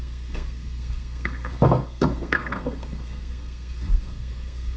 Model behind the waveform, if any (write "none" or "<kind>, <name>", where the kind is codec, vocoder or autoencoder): codec, SNAC